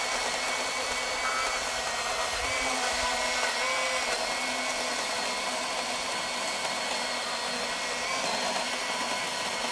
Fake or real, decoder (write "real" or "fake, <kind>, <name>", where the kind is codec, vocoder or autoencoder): real